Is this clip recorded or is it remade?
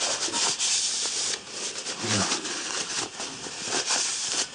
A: remade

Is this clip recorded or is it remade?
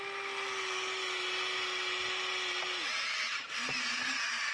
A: recorded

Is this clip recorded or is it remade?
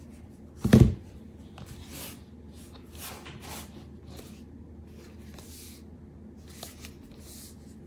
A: recorded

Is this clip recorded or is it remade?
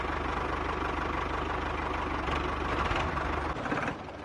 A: recorded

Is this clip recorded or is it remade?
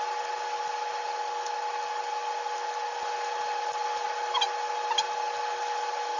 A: recorded